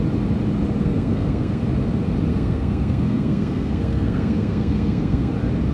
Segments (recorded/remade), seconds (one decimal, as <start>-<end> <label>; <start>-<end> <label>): 0.0-0.8 recorded; 0.8-1.6 remade; 1.6-2.3 recorded; 2.3-5.3 remade; 5.3-5.7 recorded